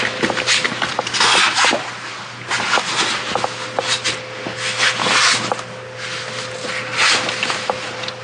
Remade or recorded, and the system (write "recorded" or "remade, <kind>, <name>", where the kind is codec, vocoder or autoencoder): recorded